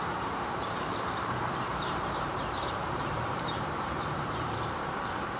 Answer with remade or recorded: remade